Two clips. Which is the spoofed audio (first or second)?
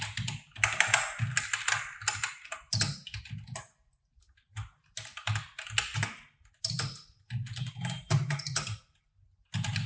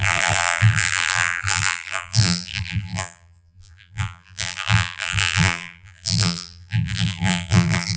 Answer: second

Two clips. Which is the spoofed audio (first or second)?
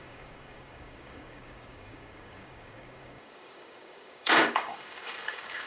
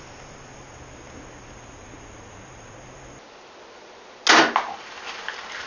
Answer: first